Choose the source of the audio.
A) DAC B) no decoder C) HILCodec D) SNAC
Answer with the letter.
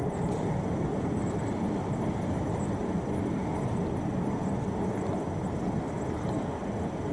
B